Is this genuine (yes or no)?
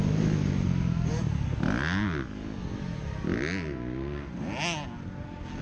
yes